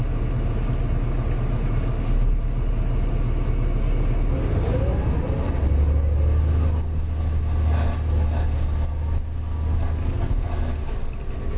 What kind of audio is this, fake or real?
real